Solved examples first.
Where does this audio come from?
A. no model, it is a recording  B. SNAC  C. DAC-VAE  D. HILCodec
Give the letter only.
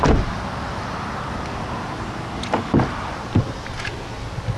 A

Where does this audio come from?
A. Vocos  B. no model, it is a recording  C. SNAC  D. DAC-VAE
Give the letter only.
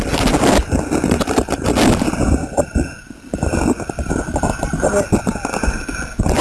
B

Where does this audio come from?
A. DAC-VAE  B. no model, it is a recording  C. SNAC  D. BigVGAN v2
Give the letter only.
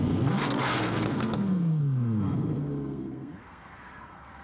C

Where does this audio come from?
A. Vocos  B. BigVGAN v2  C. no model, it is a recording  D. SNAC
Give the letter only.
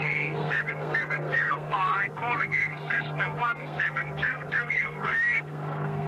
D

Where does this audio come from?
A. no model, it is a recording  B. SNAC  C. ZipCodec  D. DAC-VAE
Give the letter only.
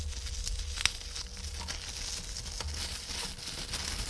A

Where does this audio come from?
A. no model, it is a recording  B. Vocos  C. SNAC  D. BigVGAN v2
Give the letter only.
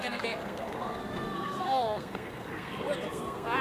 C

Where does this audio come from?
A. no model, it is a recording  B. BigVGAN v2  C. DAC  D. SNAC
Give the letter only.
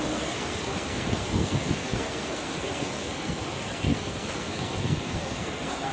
D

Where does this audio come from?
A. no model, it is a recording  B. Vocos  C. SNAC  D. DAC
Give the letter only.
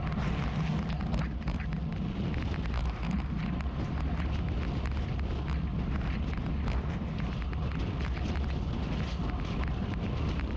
A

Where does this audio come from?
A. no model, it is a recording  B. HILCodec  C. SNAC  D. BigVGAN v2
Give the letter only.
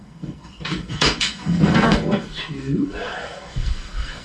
C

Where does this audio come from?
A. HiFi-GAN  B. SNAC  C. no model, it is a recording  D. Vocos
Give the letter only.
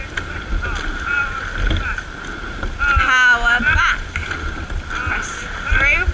C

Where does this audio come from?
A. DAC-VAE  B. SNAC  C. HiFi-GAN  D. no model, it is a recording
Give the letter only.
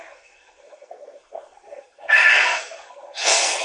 B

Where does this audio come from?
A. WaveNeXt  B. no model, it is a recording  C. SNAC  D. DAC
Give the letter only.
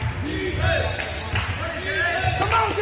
B